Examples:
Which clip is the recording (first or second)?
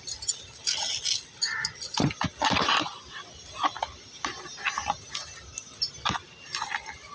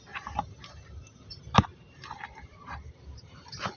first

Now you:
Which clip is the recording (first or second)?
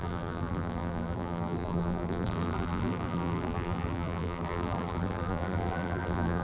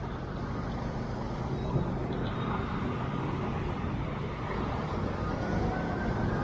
second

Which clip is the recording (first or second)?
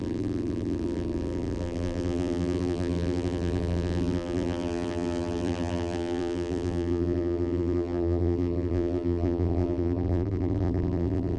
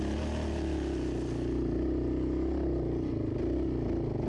second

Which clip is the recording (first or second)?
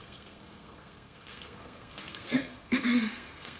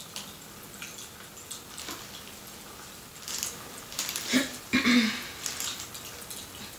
second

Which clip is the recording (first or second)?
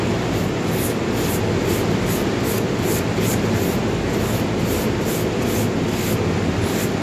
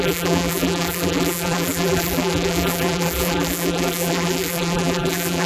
first